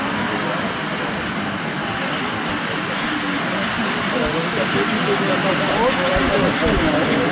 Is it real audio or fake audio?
real